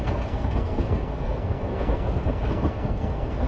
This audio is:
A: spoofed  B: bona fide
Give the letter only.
A